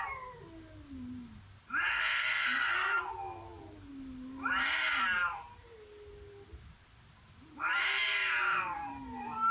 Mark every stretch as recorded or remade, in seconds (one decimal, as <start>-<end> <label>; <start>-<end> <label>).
0.0-1.9 recorded; 1.9-3.0 remade; 3.0-9.5 recorded